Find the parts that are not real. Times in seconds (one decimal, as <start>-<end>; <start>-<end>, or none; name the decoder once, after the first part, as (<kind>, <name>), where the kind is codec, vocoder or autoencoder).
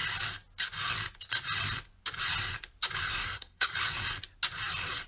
3.1-3.7 (codec, SNAC)